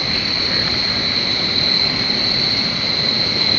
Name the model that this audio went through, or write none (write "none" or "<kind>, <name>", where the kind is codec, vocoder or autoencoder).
none